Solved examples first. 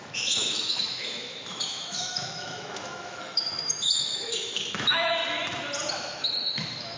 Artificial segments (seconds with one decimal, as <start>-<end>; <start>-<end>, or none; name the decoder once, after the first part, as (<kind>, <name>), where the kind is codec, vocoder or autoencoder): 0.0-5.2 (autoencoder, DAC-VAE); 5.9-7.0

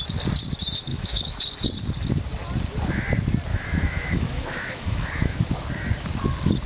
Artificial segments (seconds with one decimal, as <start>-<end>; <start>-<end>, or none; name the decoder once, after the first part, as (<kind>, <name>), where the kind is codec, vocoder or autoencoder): 0.9-1.4 (autoencoder, DAC-VAE); 3.5-5.4

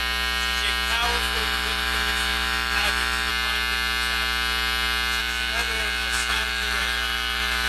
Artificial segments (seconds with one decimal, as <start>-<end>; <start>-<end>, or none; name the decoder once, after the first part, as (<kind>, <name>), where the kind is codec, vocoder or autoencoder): 1.0-3.3 (autoencoder, DAC-VAE); 5.2-7.7

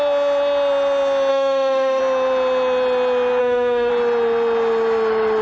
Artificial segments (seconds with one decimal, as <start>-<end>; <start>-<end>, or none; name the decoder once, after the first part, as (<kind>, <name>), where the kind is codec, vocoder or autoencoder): 1.3-2.0 (autoencoder, DAC-VAE); 3.4-3.9